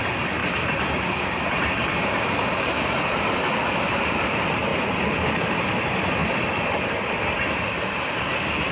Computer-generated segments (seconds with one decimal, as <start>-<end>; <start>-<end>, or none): 0.0-4.7; 5.4-8.7